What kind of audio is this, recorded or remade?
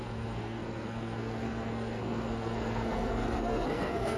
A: remade